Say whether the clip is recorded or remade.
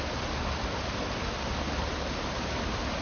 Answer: recorded